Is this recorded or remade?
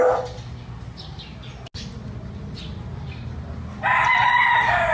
recorded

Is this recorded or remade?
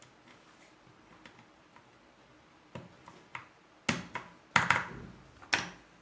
recorded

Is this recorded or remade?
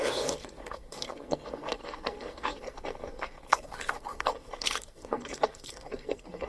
remade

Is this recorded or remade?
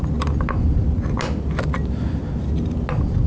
recorded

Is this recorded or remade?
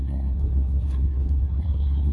remade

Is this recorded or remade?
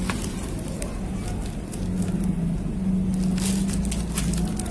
recorded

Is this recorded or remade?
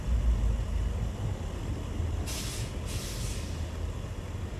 recorded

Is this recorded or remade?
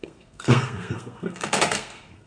remade